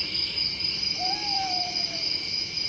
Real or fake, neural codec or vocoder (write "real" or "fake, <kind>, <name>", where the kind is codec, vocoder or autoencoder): fake, vocoder, BigVGAN v2